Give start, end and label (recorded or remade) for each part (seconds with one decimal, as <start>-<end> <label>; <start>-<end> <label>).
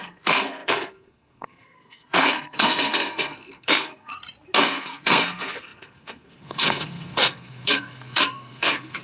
0.0-4.1 remade; 4.1-4.6 recorded; 4.6-9.0 remade